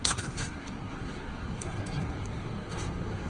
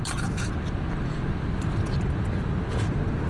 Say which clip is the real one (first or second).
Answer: second